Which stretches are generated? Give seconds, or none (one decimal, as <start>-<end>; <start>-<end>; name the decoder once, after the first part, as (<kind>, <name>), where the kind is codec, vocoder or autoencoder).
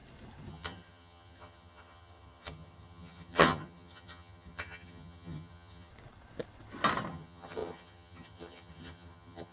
0.5-5.9 (vocoder, HiFi-GAN); 7.1-9.5